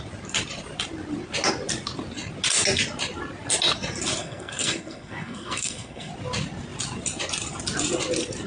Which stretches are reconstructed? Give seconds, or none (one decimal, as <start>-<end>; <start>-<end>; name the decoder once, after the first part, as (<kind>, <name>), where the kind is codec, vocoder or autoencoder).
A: 4.2-6.1 (codec, SNAC)